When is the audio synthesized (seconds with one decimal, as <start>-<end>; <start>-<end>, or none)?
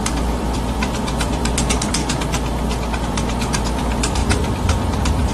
0.0-2.0; 3.0-5.3